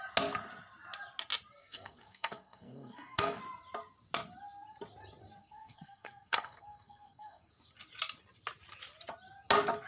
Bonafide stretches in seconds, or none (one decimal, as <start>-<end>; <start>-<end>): 0.0-1.6; 3.4-5.4; 7.5-9.9